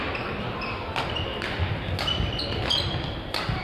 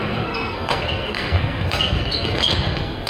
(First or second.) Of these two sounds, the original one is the first